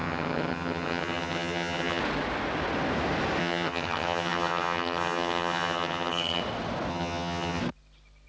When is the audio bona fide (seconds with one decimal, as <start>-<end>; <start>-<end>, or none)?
2.0-3.4; 6.4-6.9; 7.6-8.3